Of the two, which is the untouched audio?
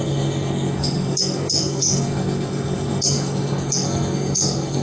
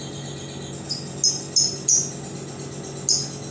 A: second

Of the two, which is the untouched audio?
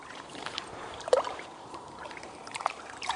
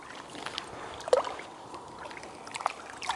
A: second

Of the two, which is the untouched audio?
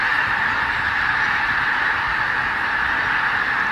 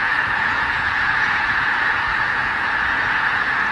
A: first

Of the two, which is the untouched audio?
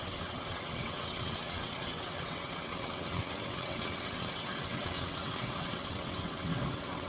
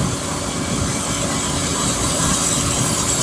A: second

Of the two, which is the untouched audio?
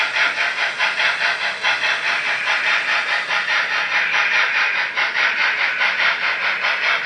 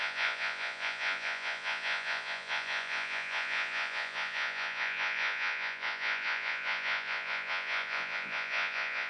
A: first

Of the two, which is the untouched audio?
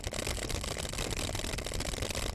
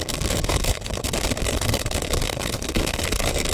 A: first